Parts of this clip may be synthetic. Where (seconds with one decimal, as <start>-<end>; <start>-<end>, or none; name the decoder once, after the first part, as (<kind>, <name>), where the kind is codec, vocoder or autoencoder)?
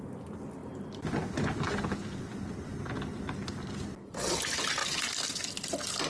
none